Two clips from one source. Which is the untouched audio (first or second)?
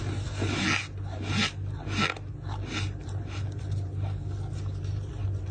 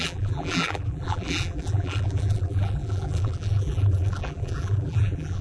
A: first